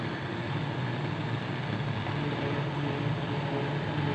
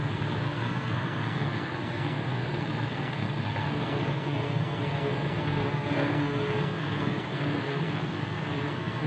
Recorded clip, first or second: first